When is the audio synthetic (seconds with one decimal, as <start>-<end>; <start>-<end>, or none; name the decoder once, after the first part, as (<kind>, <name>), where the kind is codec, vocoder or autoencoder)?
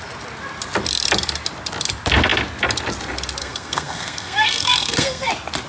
3.4-5.3 (codec, SNAC)